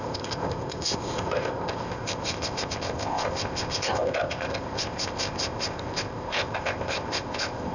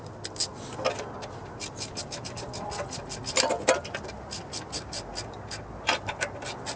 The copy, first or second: first